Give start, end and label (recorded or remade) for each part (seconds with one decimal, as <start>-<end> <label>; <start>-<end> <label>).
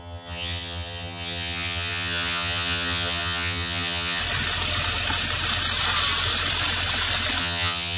0.0-4.2 remade; 4.2-7.4 recorded; 7.4-8.0 remade